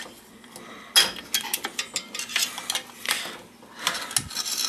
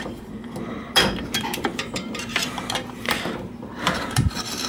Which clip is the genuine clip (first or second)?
first